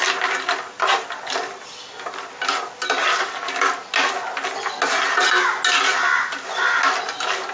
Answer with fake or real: real